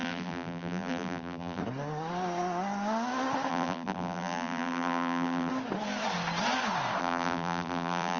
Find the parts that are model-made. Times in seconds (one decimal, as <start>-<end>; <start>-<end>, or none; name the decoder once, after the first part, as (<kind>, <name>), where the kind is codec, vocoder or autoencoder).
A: 0.0-1.6 (vocoder, BigVGAN v2); 3.5-5.5; 7.0-8.2